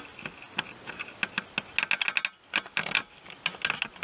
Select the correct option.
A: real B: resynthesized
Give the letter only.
A